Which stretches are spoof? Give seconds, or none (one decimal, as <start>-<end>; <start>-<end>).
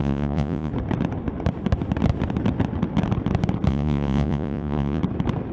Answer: 0.0-0.7; 3.7-5.0